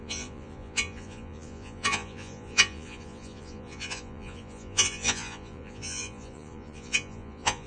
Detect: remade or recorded remade